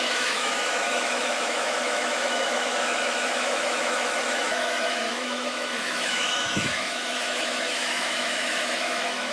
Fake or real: fake